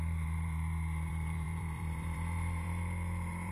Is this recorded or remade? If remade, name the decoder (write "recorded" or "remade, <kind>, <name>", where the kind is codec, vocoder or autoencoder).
remade, vocoder, BigVGAN v2